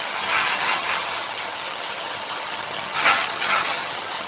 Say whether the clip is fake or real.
fake